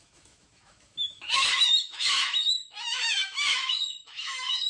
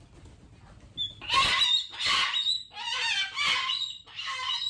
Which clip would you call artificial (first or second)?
first